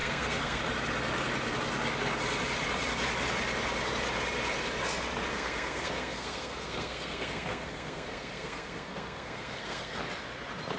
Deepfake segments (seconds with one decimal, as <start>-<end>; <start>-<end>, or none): 0.0-0.6; 5.3-10.0